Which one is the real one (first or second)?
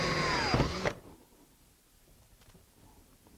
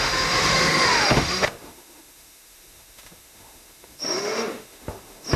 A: first